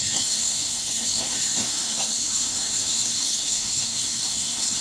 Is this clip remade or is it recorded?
remade